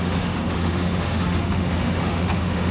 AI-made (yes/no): yes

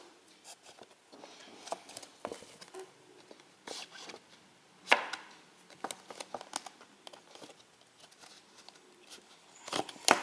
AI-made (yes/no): no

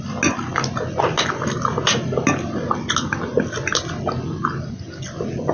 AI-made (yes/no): no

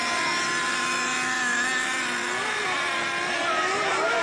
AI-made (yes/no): no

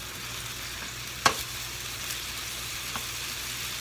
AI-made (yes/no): no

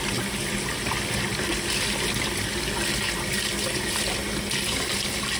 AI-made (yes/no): no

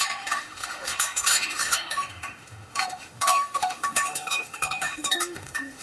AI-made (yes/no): yes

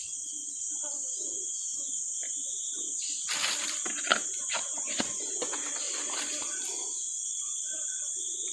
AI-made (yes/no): no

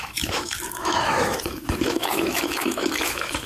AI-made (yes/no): yes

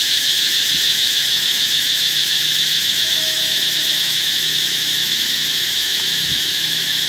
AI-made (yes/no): yes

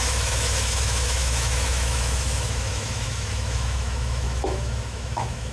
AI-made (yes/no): yes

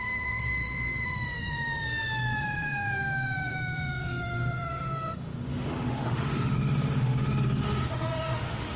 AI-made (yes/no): yes